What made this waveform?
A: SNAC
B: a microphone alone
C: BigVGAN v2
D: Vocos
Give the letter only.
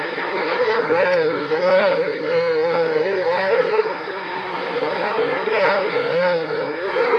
A